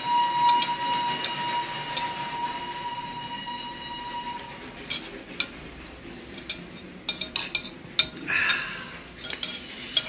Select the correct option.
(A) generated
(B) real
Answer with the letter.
B